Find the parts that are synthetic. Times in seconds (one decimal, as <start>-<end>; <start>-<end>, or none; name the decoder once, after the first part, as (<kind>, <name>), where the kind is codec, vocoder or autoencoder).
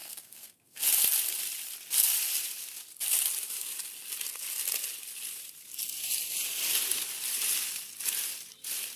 0.0-0.8 (codec, SNAC)